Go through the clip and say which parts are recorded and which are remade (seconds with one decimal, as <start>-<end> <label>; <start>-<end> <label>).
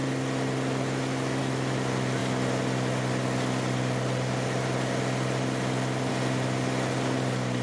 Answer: 0.0-7.6 recorded